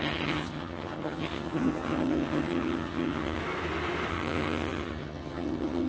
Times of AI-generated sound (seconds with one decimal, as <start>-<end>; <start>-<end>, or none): 0.0-3.4; 4.1-5.9